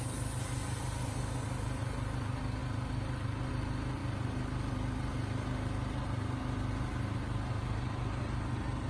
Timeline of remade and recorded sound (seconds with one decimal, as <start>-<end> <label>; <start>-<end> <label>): 0.0-8.9 recorded